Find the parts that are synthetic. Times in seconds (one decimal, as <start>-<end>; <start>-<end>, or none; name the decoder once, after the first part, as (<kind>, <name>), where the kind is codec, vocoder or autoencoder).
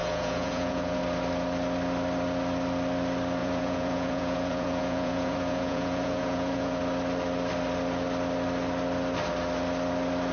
0.0-1.0 (vocoder, Vocos); 3.4-6.8